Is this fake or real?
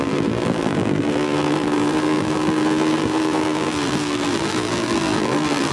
fake